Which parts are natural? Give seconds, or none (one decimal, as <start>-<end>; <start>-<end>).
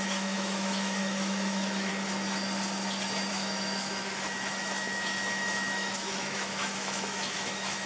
1.9-3.3